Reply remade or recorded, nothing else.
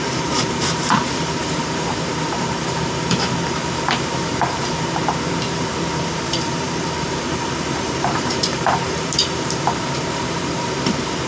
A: remade